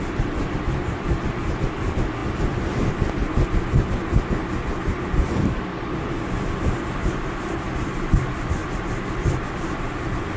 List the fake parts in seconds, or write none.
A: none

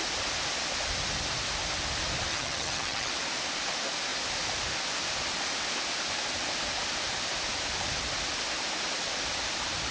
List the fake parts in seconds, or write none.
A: 2.3-3.1

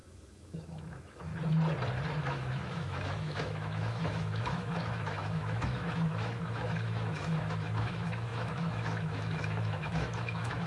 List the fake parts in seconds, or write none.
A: 0.0-1.3; 2.2-10.7

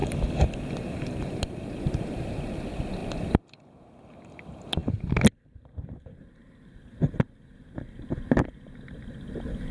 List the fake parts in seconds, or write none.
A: 0.0-1.8; 3.0-3.6

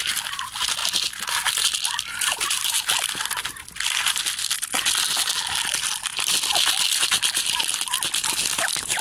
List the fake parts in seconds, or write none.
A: none

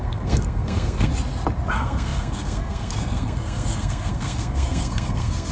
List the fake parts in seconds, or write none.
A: 0.0-1.1; 1.7-5.5

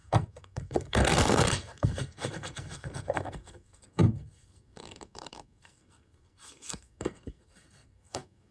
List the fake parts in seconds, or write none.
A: 0.0-8.5

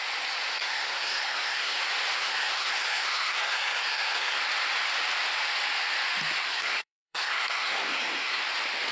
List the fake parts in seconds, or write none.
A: 0.5-1.8; 2.2-4.4; 6.4-8.4